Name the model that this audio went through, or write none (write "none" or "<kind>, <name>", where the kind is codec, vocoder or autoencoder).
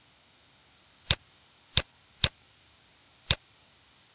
none